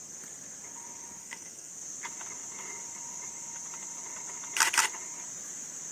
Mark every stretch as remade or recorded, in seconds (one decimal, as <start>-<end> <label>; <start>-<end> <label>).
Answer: 0.0-1.2 recorded; 1.2-1.7 remade; 1.7-5.9 recorded